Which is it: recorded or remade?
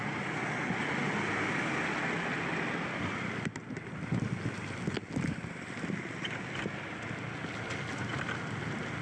recorded